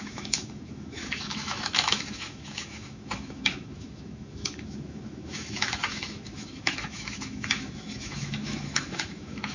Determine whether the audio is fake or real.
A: fake